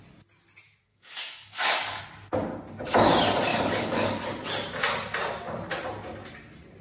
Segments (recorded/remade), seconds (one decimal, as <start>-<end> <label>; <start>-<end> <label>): 0.0-0.9 recorded; 0.9-2.0 remade; 2.0-3.5 recorded; 3.5-4.2 remade; 4.2-6.8 recorded